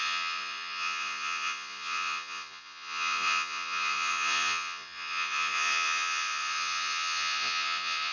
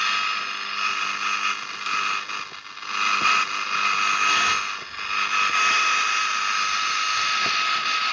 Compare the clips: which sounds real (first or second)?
second